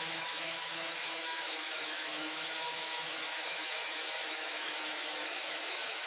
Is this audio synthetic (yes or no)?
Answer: yes